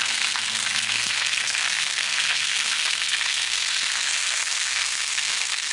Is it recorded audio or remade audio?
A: remade